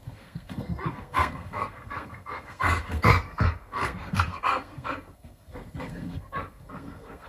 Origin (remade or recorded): remade